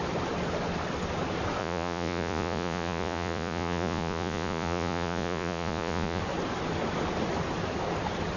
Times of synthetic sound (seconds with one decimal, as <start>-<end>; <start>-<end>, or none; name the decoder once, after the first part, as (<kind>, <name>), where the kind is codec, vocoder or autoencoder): 1.6-6.2 (vocoder, Vocos)